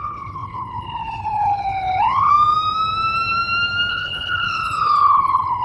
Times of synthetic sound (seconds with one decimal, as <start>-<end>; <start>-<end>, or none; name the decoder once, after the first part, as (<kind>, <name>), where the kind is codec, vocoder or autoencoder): 0.0-2.3 (codec, HILCodec); 3.9-5.6